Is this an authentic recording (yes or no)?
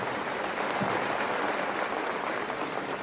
yes